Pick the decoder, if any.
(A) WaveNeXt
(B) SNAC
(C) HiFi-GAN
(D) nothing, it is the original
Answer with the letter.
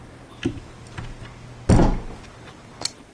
D